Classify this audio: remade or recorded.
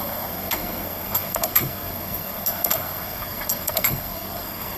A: remade